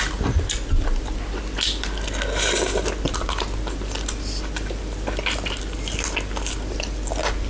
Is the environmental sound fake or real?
real